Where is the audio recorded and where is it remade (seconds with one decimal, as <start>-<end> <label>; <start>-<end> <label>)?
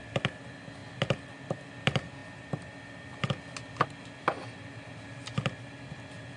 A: 0.0-6.4 recorded